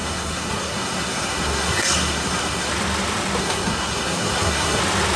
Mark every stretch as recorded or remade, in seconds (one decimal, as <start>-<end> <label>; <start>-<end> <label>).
0.0-2.7 remade; 2.7-3.4 recorded; 3.4-4.8 remade; 4.8-5.2 recorded